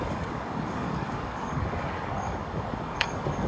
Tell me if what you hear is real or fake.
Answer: fake